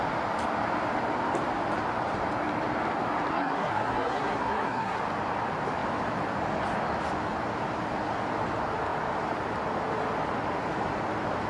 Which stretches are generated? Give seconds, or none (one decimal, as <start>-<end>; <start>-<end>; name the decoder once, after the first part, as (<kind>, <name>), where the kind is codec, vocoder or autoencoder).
3.3-5.0 (codec, SNAC)